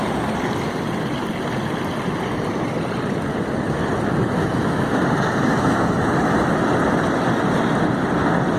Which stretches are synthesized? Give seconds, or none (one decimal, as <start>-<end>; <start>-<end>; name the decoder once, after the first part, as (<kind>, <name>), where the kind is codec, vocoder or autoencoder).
4.4-5.0 (autoencoder, DAC-VAE)